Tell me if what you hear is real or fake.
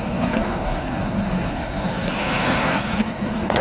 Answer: fake